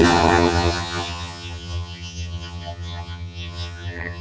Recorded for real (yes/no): no